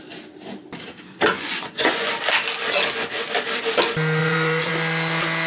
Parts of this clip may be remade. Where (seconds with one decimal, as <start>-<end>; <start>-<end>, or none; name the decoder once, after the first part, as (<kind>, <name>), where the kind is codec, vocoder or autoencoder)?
1.3-2.1 (vocoder, Vocos); 4.2-4.7